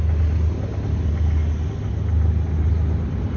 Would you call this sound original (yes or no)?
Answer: yes